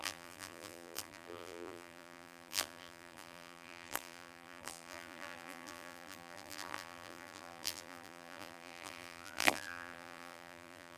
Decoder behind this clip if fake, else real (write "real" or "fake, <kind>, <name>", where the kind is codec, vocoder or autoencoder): fake, vocoder, BigVGAN v2